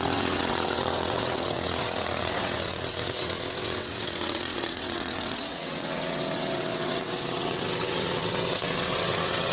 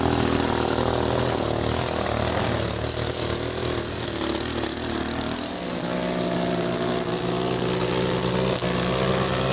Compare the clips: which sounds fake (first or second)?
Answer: first